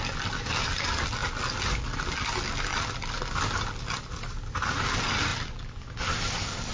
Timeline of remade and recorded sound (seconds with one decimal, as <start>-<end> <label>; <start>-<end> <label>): 0.0-6.7 recorded